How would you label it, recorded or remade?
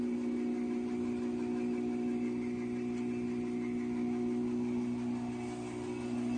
recorded